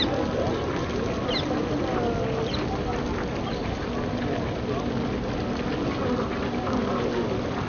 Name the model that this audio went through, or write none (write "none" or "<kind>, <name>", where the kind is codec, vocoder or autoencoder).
none